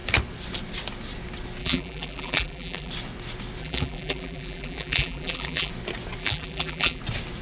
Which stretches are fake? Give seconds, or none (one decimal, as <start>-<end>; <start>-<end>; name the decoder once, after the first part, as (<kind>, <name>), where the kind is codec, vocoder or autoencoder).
1.6-2.9 (vocoder, BigVGAN v2); 3.6-5.7; 6.2-7.0